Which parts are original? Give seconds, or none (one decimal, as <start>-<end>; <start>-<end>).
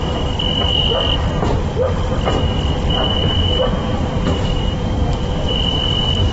0.0-3.2